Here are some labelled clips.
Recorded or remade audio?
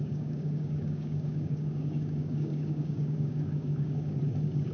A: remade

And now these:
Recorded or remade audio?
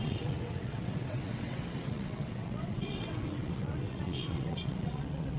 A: remade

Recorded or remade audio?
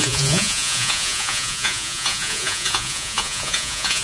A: remade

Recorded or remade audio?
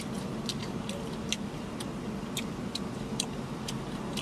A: remade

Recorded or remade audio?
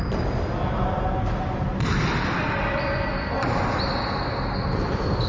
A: recorded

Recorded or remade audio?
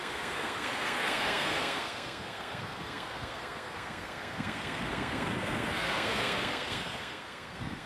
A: remade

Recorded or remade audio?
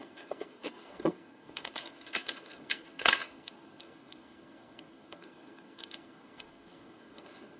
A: remade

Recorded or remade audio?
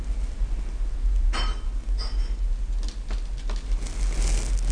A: recorded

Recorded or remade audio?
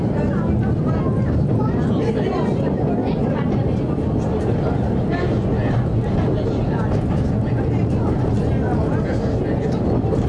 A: recorded